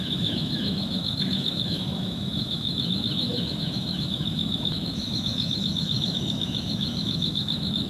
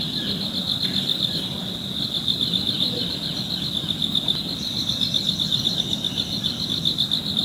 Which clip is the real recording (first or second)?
second